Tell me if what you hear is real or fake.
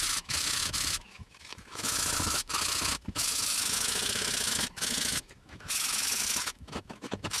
fake